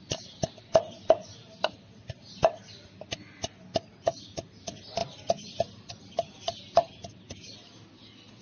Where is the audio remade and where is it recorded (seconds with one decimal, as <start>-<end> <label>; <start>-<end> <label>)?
0.0-8.4 recorded

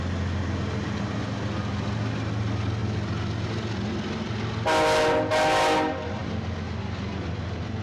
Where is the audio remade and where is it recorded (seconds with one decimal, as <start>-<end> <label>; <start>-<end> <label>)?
0.0-7.8 recorded